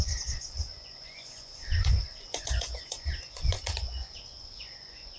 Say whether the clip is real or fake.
fake